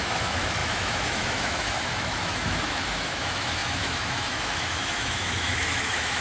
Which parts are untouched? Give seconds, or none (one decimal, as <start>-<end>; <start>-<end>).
none

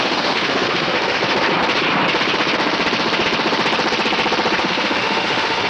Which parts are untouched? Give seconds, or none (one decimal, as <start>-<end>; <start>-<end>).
1.2-4.6

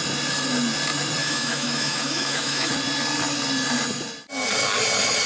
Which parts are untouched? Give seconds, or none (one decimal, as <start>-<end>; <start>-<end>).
0.0-1.2; 2.7-5.3

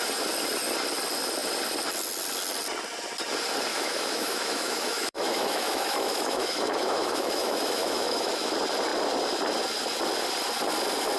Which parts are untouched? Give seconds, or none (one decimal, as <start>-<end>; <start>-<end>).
0.0-3.7; 8.5-11.2

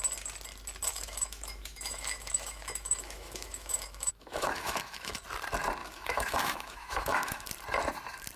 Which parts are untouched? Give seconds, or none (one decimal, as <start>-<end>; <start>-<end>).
0.0-0.9; 5.2-5.8; 7.5-8.4

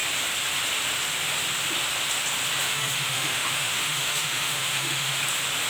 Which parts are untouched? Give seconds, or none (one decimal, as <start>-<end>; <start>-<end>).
0.0-2.6; 5.2-5.7